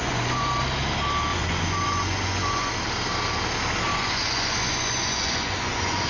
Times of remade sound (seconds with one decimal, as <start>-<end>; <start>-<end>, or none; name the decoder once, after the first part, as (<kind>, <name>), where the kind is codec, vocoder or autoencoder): 0.0-0.5 (vocoder, Vocos); 1.3-2.7; 3.9-6.1